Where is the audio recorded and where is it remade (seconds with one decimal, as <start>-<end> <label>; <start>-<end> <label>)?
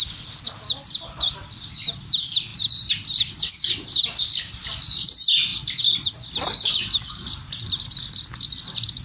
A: 0.0-9.0 recorded